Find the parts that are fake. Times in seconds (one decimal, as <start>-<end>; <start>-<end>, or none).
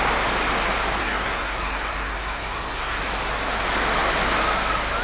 1.0-3.0